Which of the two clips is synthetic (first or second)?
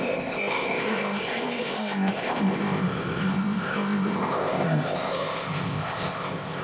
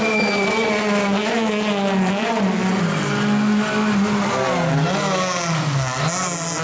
first